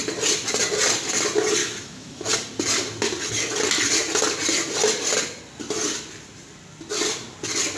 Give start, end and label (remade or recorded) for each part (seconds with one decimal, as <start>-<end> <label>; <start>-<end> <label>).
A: 0.0-1.6 recorded; 1.6-2.3 remade; 2.3-7.8 recorded